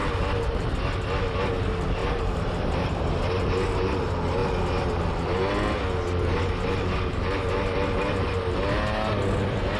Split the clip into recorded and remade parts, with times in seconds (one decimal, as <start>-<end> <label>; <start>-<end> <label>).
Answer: 0.0-0.7 remade; 0.7-2.0 recorded; 2.0-3.1 remade; 3.1-9.8 recorded